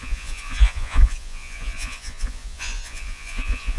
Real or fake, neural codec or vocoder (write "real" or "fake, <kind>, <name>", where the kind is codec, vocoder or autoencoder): fake, vocoder, Vocos